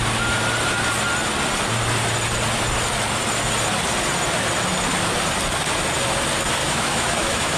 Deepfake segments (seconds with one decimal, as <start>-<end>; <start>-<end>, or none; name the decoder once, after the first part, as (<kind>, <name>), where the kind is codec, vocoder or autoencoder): 6.6-7.6 (autoencoder, DAC-VAE)